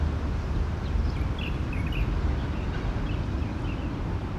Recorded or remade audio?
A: recorded